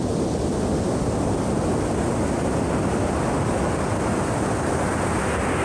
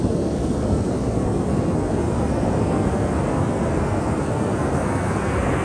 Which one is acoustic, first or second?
first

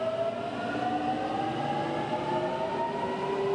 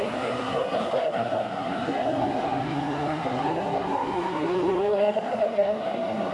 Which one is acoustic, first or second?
first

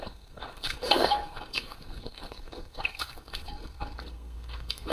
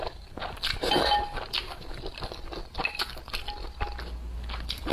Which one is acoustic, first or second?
second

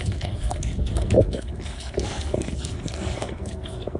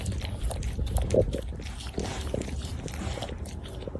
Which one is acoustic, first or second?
second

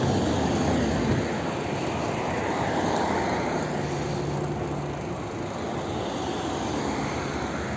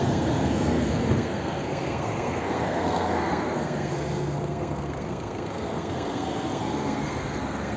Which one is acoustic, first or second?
first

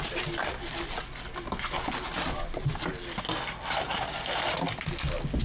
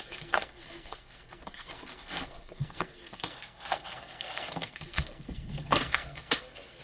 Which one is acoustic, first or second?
first